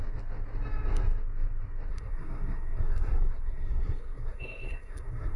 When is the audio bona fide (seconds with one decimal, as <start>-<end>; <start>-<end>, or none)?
0.0-1.9